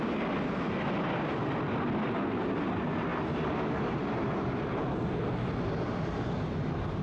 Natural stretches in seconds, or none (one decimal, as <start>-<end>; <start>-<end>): 0.0-7.0